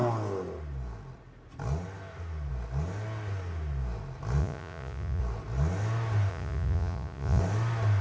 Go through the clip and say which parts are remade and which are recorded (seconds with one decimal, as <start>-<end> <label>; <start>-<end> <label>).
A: 0.0-4.4 recorded; 4.4-5.2 remade; 5.2-6.3 recorded; 6.3-7.4 remade; 7.4-8.0 recorded